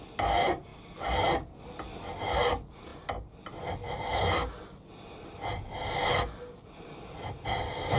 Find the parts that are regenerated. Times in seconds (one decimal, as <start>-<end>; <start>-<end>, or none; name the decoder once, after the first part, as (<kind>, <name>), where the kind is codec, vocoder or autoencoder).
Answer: none